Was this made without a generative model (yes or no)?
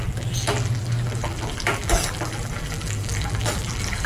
no